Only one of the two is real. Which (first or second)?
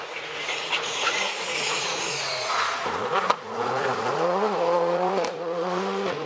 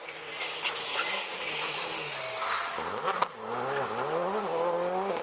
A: second